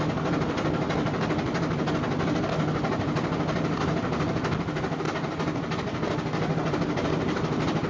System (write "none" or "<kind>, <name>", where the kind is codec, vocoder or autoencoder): none